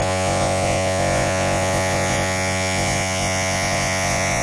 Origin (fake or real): fake